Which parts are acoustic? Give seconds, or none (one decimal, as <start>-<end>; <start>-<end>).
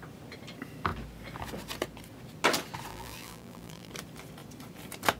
0.0-2.9; 3.9-5.2